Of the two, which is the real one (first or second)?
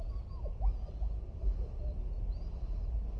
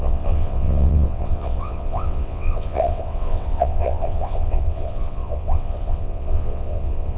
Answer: first